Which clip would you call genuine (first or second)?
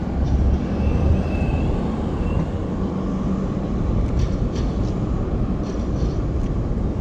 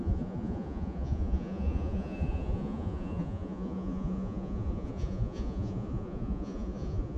first